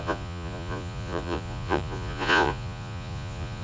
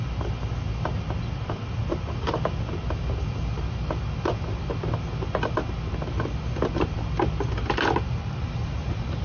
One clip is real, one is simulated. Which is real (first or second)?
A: second